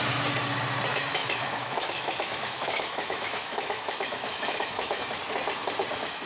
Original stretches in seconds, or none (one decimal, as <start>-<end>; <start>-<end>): 0.0-1.2; 5.0-6.3